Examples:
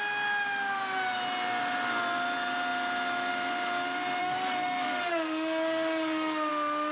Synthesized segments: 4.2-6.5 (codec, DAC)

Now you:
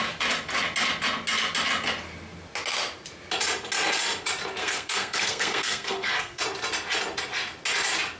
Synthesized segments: 4.6-6.4 (codec, SNAC)

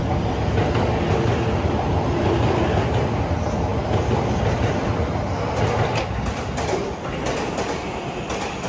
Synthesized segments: none

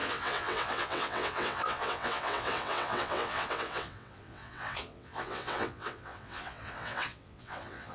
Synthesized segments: 0.0-7.9 (vocoder, WaveNeXt)

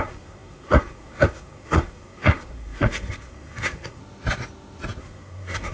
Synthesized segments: 0.0-4.0 (codec, SNAC); 5.0-5.7

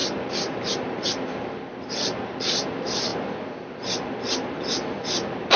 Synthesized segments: none

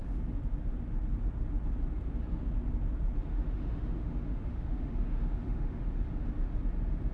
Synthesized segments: 3.3-5.8 (autoencoder, DAC-VAE)